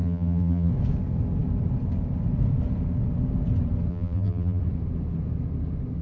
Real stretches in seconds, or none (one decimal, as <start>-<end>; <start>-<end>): 0.7-3.9; 4.6-6.0

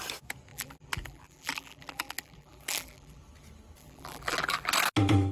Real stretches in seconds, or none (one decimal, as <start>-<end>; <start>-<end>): 0.0-0.5; 3.2-3.8; 4.7-5.3

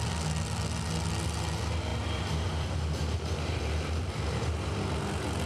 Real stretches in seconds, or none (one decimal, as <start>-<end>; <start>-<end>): 0.0-1.9; 4.6-5.5

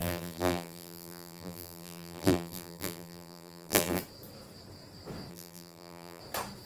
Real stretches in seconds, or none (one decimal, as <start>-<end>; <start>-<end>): 4.0-5.3; 6.2-6.7

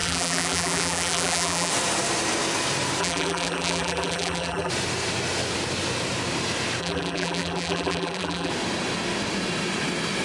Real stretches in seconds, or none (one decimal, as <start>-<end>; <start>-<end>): 1.7-3.0; 4.7-6.8; 8.5-10.2